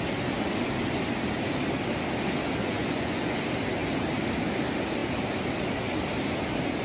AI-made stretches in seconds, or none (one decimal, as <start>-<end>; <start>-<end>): 2.6-3.4